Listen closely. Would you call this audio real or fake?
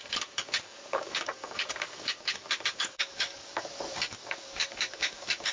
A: fake